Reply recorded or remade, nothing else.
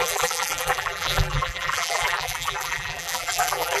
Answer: remade